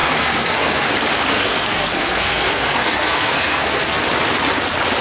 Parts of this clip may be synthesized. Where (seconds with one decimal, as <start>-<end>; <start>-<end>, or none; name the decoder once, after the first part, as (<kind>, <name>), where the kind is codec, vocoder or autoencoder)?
0.0-0.9 (codec, SNAC); 1.3-4.0